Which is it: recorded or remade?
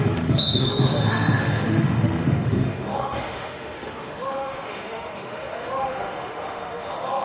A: remade